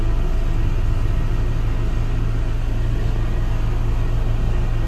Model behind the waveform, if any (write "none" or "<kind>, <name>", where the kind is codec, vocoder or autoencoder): none